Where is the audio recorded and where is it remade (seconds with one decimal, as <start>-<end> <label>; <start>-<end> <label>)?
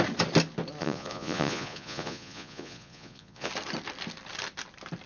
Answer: 0.0-0.8 recorded; 0.8-3.5 remade; 3.5-5.1 recorded